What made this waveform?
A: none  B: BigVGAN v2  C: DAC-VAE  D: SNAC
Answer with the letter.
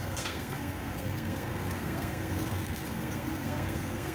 D